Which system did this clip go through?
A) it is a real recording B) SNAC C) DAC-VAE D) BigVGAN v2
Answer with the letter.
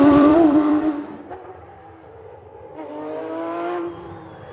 D